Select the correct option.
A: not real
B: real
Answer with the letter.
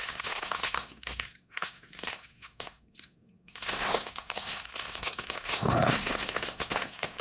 A